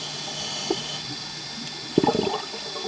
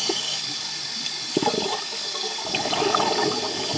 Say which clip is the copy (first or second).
second